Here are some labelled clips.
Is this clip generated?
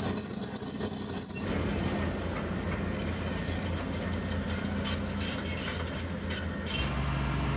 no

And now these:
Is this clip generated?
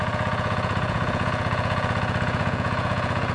yes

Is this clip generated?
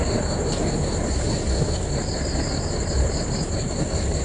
no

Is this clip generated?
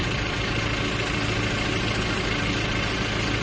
no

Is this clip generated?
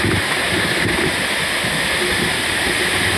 no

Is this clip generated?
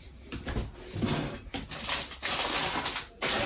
no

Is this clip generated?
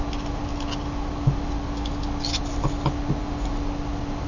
no